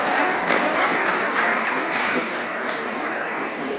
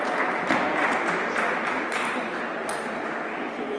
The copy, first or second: first